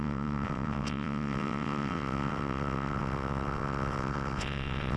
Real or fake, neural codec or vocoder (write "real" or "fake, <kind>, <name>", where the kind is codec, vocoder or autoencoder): fake, vocoder, WaveNeXt